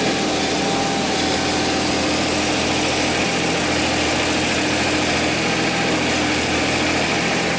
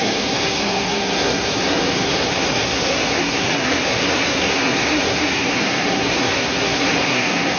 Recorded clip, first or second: first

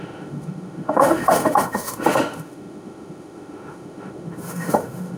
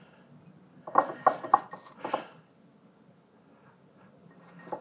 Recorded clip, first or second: second